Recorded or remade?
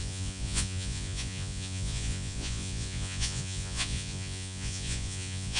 remade